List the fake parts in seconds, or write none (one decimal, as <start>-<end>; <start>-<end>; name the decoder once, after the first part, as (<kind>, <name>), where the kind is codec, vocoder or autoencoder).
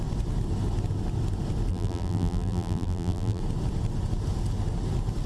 1.7-3.4 (vocoder, BigVGAN v2)